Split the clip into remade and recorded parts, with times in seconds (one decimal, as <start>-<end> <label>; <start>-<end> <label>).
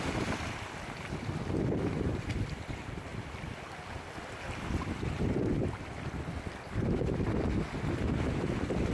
0.0-8.9 recorded